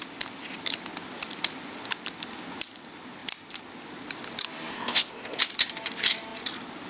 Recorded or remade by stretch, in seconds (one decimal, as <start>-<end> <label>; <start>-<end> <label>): 0.0-4.7 recorded; 4.7-5.4 remade; 5.4-6.9 recorded